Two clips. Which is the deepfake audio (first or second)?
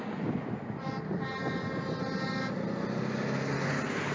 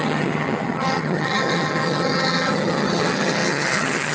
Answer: second